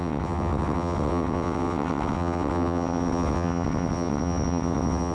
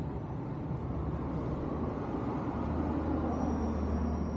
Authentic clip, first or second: second